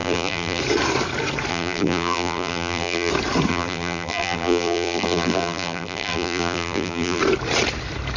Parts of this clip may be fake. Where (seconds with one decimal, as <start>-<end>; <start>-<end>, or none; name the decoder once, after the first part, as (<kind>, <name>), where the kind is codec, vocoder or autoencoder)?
0.0-0.6 (vocoder, BigVGAN v2); 1.5-3.1; 3.5-7.2